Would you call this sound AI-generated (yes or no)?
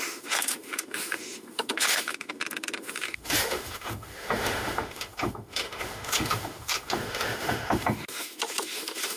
yes